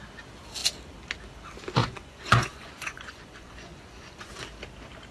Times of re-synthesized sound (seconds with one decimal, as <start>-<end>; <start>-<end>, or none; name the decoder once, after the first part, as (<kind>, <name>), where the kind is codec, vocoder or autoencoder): 1.8-4.3 (vocoder, Vocos)